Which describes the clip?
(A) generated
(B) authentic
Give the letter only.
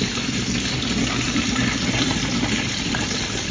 B